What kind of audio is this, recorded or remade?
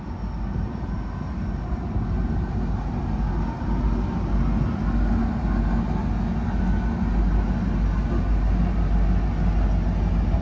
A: recorded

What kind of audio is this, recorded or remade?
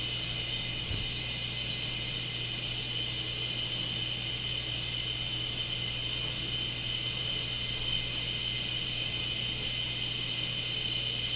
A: recorded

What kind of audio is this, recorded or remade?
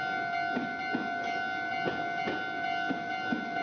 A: recorded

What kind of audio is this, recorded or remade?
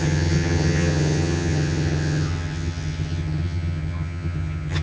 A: remade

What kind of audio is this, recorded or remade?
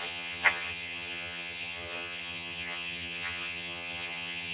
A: remade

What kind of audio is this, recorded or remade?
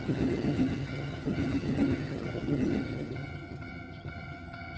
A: remade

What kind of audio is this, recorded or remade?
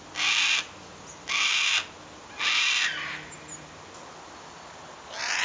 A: recorded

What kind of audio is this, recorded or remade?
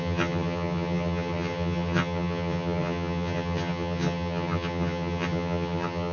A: remade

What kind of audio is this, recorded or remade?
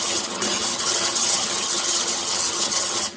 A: remade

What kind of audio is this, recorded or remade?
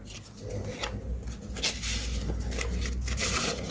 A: recorded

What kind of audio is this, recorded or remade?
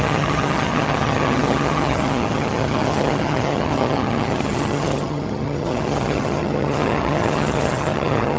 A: remade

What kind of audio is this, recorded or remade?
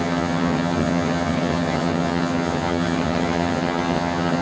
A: remade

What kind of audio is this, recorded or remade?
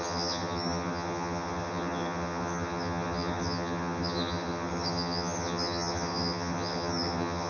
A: remade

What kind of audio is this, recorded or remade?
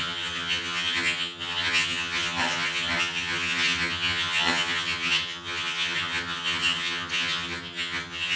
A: remade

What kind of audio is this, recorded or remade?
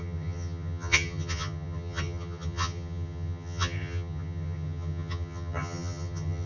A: remade